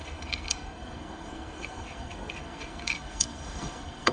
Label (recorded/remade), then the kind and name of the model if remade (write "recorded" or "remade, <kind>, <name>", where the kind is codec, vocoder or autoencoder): remade, codec, SNAC